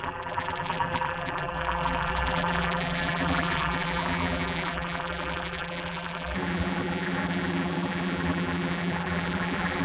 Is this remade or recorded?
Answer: remade